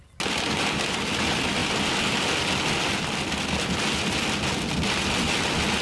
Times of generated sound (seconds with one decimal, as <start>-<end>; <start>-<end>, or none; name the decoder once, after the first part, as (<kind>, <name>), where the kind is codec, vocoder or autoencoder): none